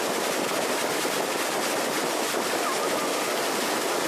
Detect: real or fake real